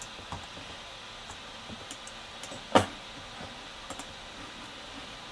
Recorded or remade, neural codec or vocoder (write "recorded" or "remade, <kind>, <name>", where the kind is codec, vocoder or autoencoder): recorded